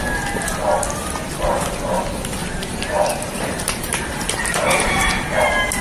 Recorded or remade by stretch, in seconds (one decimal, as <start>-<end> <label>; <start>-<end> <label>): 0.0-2.4 recorded; 2.4-5.1 remade; 5.1-5.8 recorded